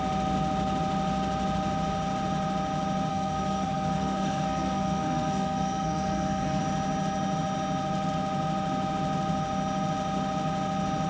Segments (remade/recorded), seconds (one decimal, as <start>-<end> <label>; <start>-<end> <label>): 0.0-3.1 recorded; 3.1-6.6 remade; 6.6-11.1 recorded